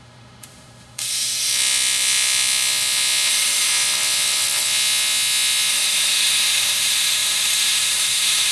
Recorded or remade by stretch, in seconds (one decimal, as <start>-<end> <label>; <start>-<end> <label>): 0.0-1.5 remade; 1.5-3.3 recorded; 3.3-3.7 remade; 3.7-5.7 recorded; 5.7-8.5 remade